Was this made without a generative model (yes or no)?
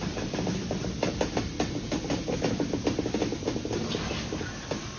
yes